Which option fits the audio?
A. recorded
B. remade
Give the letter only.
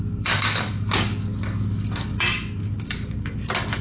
B